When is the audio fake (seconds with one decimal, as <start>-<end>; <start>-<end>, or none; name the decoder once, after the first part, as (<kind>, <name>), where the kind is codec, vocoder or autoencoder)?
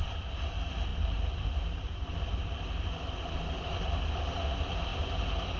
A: 0.0-0.9 (vocoder, BigVGAN v2); 4.3-4.9